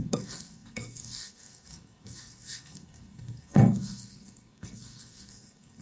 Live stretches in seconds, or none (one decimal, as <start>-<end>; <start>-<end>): none